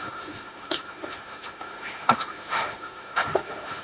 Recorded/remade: remade